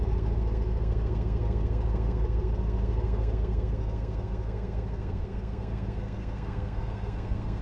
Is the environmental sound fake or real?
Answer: fake